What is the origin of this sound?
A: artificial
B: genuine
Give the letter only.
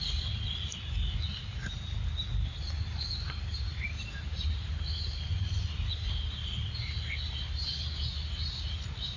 B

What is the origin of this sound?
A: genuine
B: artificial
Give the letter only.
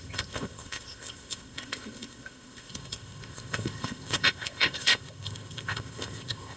B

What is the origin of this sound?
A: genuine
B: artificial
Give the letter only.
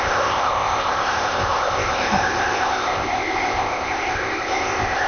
B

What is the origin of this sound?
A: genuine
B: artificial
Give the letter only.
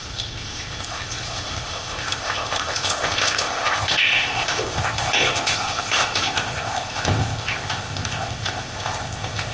B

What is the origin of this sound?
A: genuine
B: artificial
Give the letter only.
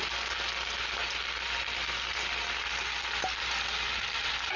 A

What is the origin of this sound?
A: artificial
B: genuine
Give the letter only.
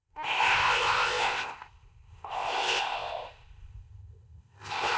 A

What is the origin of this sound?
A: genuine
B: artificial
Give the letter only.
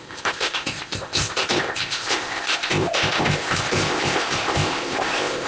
B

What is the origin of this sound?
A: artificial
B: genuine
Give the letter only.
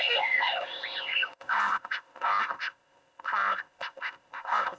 A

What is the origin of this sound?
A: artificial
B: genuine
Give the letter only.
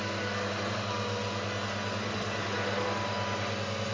B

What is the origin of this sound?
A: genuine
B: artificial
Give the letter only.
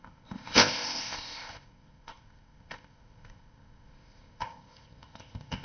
B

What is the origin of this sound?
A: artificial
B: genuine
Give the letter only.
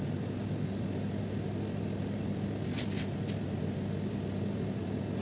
B